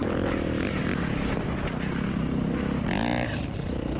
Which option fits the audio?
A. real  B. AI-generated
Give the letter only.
A